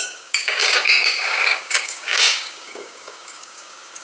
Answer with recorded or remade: remade